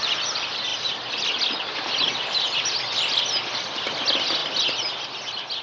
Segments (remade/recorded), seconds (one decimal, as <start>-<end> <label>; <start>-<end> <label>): 0.0-5.6 recorded